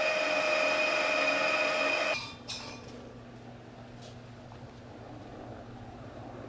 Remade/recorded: recorded